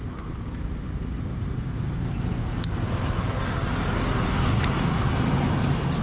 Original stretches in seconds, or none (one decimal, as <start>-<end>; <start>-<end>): 2.4-4.6

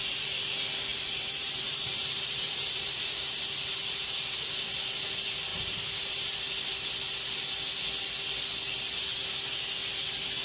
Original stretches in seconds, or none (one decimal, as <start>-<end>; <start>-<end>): 0.0-0.9; 4.6-5.5; 6.5-10.4